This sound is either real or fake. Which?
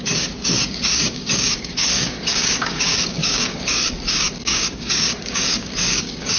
fake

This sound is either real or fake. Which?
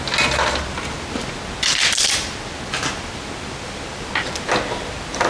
real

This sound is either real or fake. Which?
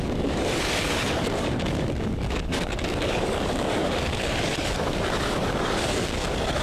fake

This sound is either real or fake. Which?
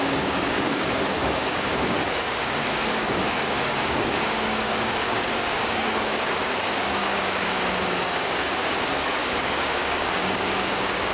fake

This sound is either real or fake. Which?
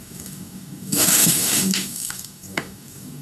fake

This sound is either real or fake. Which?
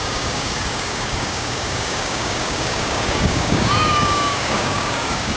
fake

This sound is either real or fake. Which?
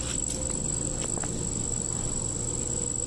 real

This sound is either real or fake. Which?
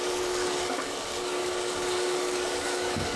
fake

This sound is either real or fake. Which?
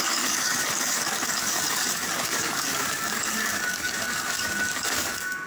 fake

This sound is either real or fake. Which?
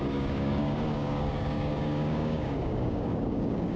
fake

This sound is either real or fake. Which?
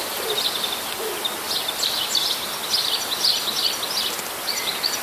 real